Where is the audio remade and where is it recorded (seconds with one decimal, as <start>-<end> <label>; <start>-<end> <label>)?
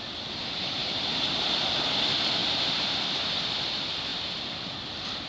0.0-0.8 recorded; 0.8-1.5 remade; 1.5-2.4 recorded; 2.4-3.2 remade; 3.2-4.1 recorded; 4.1-4.7 remade; 4.7-5.3 recorded